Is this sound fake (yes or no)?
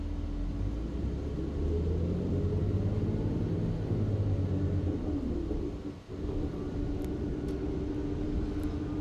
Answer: no